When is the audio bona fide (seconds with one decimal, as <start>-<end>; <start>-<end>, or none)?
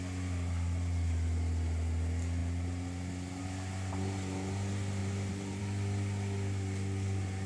0.0-5.0; 5.6-7.5